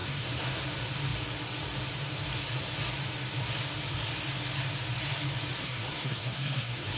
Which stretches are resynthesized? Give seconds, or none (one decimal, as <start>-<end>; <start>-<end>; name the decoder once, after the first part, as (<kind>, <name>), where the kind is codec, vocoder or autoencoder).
0.0-0.6 (codec, SNAC); 5.6-7.0